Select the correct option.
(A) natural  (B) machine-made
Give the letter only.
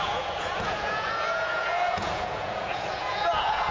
B